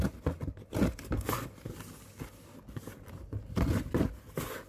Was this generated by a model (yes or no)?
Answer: no